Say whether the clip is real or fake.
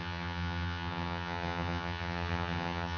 fake